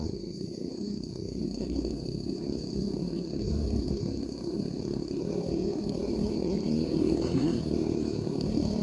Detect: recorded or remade remade